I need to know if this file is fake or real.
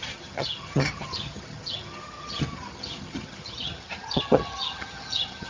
fake